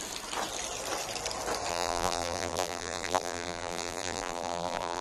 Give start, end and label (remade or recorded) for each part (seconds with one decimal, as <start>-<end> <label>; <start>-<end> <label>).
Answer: 0.0-1.7 recorded; 1.7-5.0 remade